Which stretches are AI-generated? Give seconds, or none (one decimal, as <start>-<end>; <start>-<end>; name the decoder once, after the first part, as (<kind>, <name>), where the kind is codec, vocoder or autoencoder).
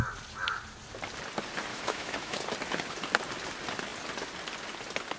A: 1.7-2.4 (autoencoder, DAC-VAE)